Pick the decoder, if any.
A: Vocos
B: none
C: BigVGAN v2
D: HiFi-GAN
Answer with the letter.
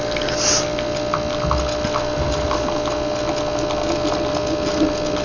B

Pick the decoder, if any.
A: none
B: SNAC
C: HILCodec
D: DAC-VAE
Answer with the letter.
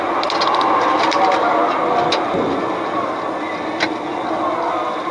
A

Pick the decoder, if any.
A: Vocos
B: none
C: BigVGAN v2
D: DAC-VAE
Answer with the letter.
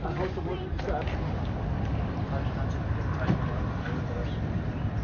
B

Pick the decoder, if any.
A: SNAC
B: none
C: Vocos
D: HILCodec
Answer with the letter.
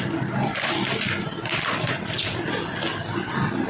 B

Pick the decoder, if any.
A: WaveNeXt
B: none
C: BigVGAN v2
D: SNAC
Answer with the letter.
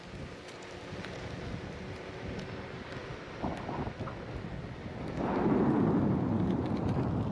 B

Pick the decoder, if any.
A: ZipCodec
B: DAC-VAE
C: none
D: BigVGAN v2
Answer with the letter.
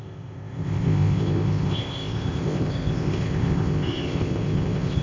A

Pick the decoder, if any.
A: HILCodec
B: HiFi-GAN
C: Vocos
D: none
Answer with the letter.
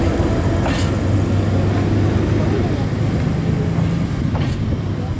D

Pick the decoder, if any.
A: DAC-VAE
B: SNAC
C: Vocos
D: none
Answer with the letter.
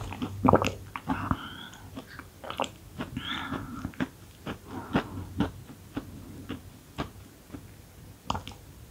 D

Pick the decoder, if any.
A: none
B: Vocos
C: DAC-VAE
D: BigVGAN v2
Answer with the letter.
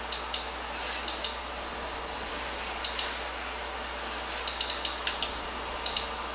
A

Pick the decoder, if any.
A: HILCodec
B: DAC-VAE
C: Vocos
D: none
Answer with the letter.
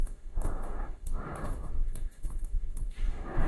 B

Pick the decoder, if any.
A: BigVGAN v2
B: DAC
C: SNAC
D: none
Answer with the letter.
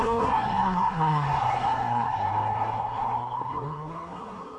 C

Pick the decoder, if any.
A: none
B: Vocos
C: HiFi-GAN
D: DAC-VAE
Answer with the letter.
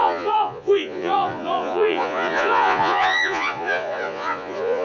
B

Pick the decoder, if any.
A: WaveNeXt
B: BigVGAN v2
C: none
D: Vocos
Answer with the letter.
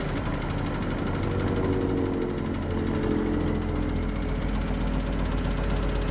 C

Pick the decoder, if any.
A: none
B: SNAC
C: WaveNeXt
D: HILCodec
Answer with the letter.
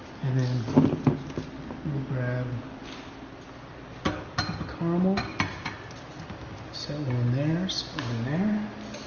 A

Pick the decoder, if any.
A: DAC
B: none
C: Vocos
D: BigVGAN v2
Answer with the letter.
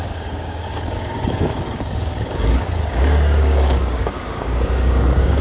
A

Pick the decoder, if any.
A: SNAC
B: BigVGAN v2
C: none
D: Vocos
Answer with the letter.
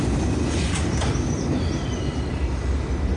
C